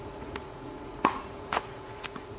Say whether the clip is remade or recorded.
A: remade